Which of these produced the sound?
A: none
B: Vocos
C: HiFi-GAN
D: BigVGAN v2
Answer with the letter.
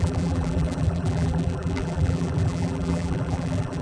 D